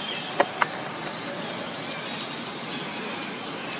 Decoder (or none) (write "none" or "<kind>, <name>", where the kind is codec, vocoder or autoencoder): none